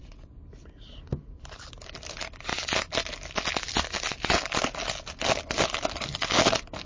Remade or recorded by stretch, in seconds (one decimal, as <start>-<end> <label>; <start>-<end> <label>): 0.0-6.9 recorded